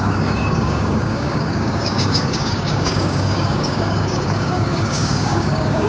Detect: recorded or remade remade